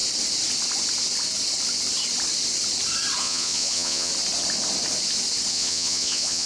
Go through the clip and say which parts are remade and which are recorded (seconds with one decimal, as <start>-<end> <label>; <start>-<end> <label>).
0.0-3.2 recorded; 3.2-4.1 remade; 4.1-5.5 recorded; 5.5-6.5 remade

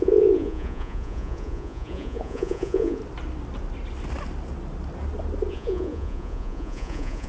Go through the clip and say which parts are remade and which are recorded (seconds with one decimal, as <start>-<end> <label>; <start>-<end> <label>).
0.0-3.0 remade; 3.0-5.5 recorded; 5.5-7.3 remade